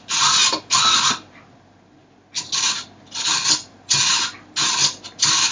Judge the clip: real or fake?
real